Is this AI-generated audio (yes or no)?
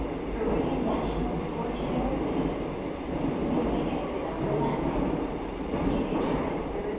no